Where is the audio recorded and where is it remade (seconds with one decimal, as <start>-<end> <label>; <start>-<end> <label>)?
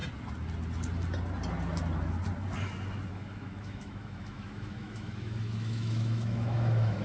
0.0-3.1 recorded; 3.1-7.0 remade